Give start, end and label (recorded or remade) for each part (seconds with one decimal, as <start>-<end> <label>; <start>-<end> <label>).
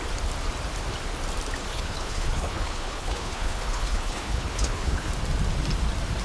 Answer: 0.0-1.7 recorded; 1.7-5.1 remade; 5.1-6.2 recorded